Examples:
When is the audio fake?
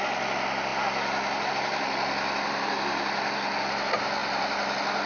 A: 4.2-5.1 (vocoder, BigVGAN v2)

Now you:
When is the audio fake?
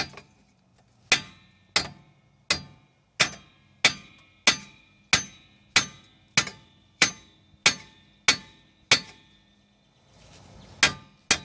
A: 6.5-7.1 (vocoder, BigVGAN v2)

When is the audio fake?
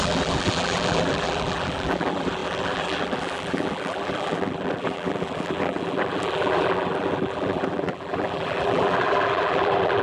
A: 0.0-10.0 (vocoder, BigVGAN v2)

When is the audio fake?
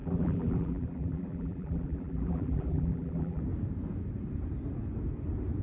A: 0.0-3.4 (vocoder, BigVGAN v2)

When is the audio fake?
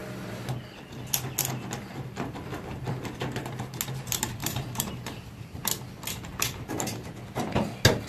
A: 4.4-5.6 (vocoder, BigVGAN v2)